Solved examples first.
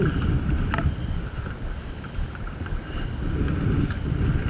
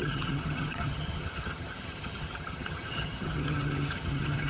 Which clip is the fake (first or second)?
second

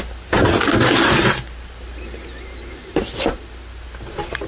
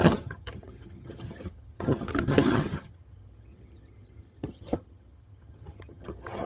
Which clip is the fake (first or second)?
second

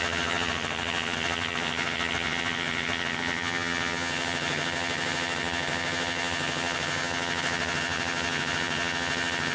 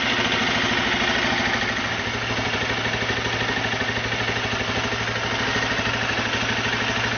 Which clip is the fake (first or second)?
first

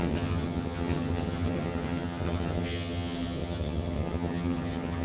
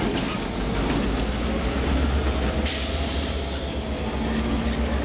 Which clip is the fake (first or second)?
first